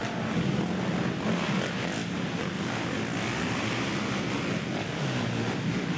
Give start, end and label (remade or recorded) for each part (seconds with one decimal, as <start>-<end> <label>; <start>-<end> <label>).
0.0-6.0 recorded